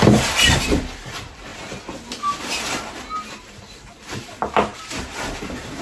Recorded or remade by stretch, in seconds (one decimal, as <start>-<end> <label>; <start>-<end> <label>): 0.0-5.8 recorded

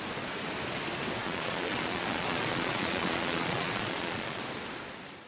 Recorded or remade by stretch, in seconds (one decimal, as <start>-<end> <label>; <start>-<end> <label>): 0.0-1.2 recorded; 1.2-4.4 remade; 4.4-5.3 recorded

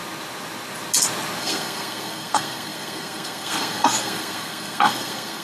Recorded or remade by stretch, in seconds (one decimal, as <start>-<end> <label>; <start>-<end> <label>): 0.0-1.4 recorded; 1.4-5.4 remade

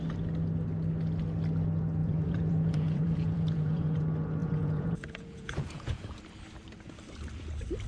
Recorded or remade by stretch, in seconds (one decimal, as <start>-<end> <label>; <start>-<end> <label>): 0.0-2.0 recorded; 2.0-4.0 remade; 4.0-4.4 recorded; 4.4-6.2 remade; 6.2-7.9 recorded

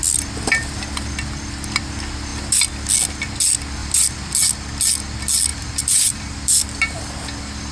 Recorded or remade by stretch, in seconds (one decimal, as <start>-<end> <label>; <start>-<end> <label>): 0.0-0.8 remade; 0.8-3.8 recorded; 3.8-4.3 remade; 4.3-5.5 recorded; 5.5-7.1 remade; 7.1-7.7 recorded

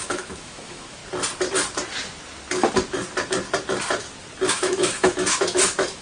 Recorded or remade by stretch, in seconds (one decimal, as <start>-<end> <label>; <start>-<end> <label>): 0.0-1.0 remade; 1.0-4.5 recorded; 4.5-6.0 remade

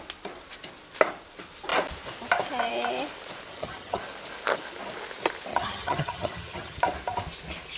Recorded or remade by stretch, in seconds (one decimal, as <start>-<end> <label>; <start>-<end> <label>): 0.0-3.5 recorded; 3.5-4.0 remade; 4.0-5.5 recorded; 5.5-6.8 remade; 6.8-7.8 recorded